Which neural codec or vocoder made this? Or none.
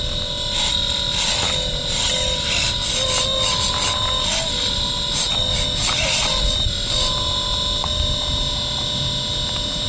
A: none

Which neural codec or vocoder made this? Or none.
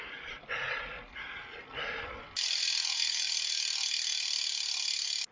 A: vocoder, BigVGAN v2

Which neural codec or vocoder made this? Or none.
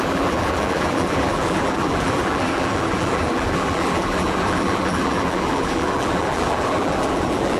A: vocoder, BigVGAN v2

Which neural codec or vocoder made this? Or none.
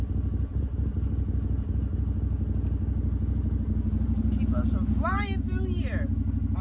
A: none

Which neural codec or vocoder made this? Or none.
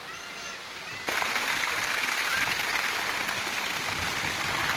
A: none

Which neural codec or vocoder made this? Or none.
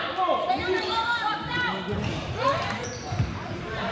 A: vocoder, BigVGAN v2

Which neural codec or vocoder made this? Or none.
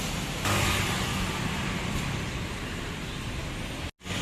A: none